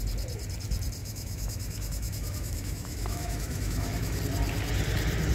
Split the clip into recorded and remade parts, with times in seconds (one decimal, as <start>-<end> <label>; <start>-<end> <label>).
0.0-1.0 recorded; 1.0-4.2 remade; 4.2-5.3 recorded